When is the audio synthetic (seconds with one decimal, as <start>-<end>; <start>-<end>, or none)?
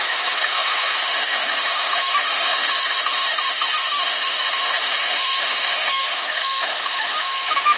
0.0-7.8